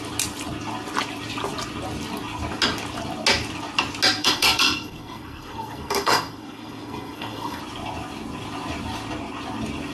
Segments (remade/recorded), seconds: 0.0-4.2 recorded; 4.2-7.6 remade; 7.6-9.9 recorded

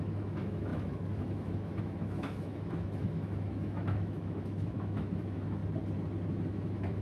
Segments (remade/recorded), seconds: 0.0-5.6 remade; 5.6-6.3 recorded; 6.3-7.0 remade

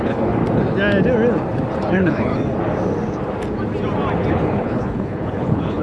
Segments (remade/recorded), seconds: 0.0-0.4 remade; 0.4-1.9 recorded; 1.9-2.3 remade; 2.3-4.3 recorded; 4.3-5.8 remade